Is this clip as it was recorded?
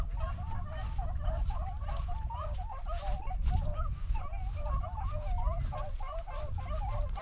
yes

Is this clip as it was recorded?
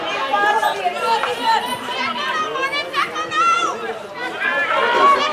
yes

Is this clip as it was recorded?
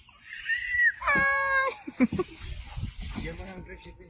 yes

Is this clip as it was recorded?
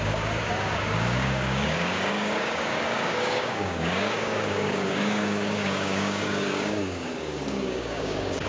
no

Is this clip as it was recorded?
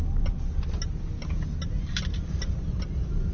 yes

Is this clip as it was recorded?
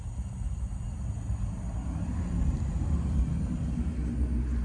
yes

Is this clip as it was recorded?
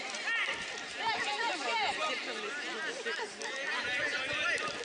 yes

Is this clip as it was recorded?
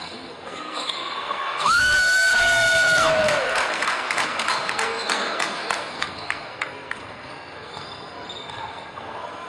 no